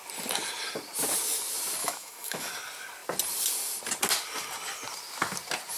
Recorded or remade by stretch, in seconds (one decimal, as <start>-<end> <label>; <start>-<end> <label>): 0.0-1.8 recorded; 1.8-2.5 remade; 2.5-5.8 recorded